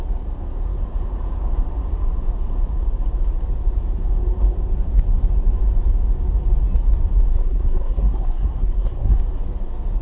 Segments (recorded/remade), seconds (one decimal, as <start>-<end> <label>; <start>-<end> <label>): 0.0-7.3 recorded; 7.3-9.2 remade; 9.2-10.0 recorded